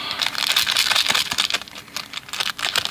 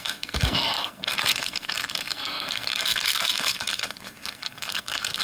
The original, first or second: first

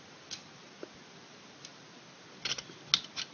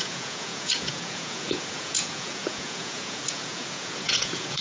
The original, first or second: first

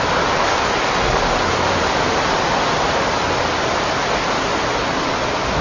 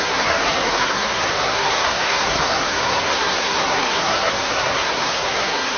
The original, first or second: first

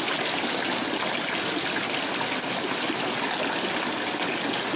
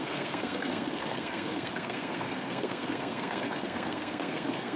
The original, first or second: first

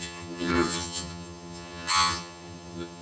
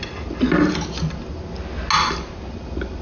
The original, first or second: second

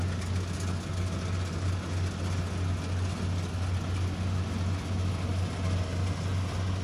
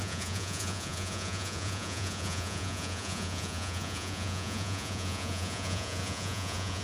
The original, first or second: first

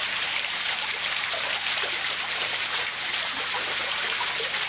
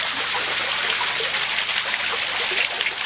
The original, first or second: second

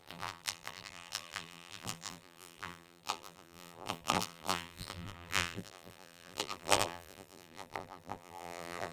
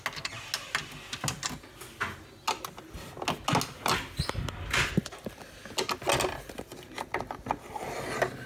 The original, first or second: second